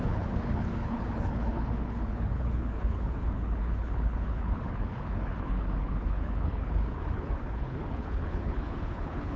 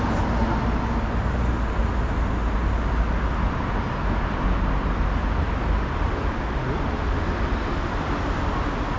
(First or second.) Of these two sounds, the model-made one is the first